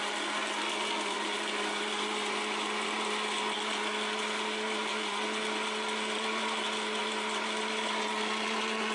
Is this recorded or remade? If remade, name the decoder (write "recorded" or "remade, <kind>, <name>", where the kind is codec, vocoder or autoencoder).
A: recorded